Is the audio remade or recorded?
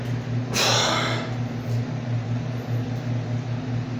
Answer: recorded